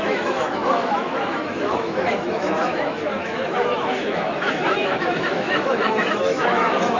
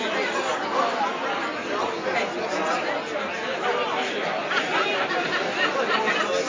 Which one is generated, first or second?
first